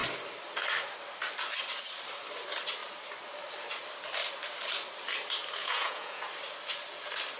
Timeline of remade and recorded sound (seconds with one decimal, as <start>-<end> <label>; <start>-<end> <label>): 0.0-5.6 recorded; 5.6-6.3 remade; 6.3-7.4 recorded